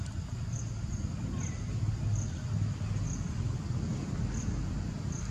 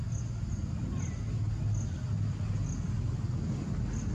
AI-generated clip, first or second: first